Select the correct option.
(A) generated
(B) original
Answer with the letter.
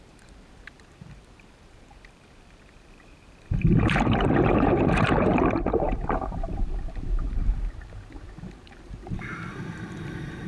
A